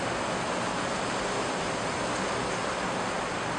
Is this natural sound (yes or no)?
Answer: yes